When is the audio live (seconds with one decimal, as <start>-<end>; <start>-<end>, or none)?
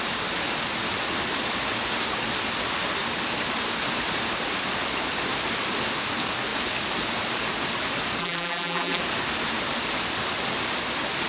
0.0-8.2; 9.0-11.3